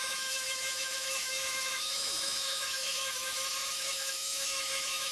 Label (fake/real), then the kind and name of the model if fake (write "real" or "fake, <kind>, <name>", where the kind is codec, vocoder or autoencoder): fake, autoencoder, DAC-VAE